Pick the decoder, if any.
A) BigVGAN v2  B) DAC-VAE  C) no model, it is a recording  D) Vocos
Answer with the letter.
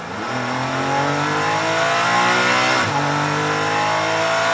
C